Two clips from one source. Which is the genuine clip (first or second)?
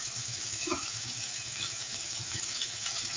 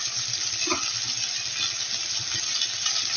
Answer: second